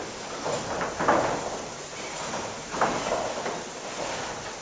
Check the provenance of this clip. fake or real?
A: real